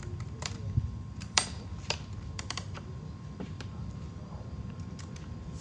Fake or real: fake